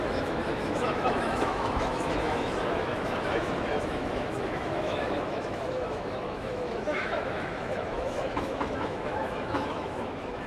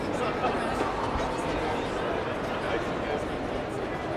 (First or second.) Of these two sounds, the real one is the second